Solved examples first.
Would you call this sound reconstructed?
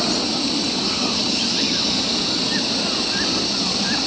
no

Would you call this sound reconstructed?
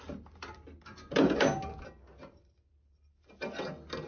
no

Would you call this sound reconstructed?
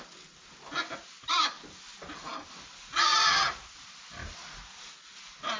no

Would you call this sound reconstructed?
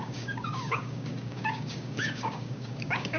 yes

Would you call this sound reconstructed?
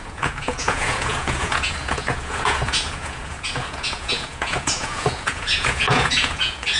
yes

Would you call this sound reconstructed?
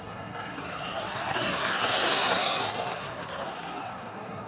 yes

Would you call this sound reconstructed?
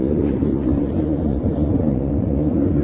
yes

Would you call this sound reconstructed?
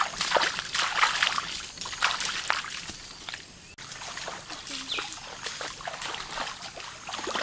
no